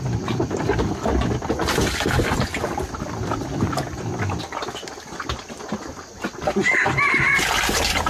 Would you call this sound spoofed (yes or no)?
no